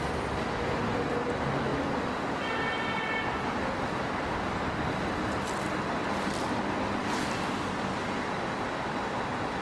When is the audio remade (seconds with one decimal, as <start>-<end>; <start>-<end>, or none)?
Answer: none

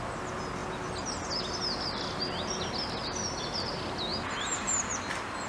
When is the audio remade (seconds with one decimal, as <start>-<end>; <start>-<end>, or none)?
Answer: 4.1-4.9

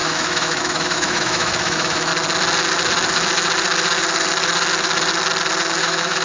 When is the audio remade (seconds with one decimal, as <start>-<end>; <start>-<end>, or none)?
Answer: 0.0-2.1; 5.8-6.2

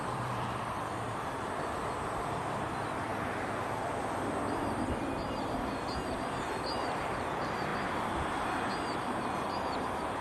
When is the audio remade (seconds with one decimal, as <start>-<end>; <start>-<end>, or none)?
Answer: 0.0-7.7; 8.3-10.2

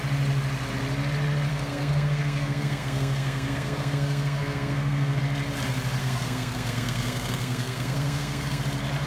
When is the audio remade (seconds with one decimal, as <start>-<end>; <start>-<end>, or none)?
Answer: 1.5-5.2; 6.0-8.6

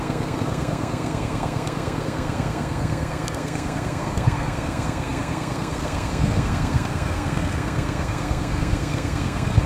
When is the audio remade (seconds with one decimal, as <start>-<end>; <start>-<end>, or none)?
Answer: 0.0-9.7

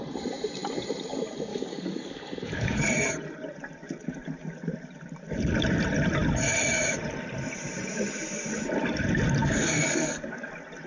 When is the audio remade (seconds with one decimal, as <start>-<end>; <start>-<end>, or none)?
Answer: 1.5-2.9; 9.4-10.5

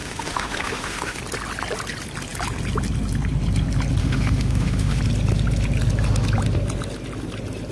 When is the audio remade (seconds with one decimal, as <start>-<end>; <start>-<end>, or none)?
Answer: 0.0-1.2; 4.0-5.0